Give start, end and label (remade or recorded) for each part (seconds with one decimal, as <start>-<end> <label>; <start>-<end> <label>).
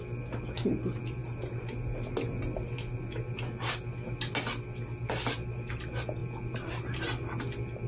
0.0-7.9 recorded